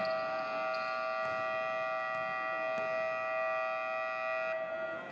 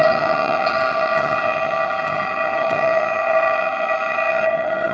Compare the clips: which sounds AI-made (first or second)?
second